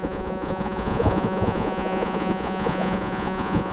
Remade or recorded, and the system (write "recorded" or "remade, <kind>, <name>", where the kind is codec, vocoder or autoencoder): remade, vocoder, Vocos